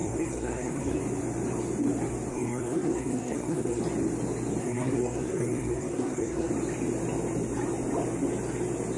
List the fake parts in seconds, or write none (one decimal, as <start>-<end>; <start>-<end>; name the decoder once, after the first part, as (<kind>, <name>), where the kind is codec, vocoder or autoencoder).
0.0-1.0 (codec, SNAC); 2.3-3.8; 4.6-6.5

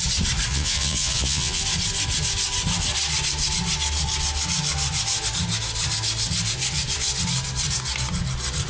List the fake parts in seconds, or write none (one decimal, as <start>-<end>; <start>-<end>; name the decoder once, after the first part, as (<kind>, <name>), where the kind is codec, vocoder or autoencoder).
0.5-1.6 (vocoder, Vocos)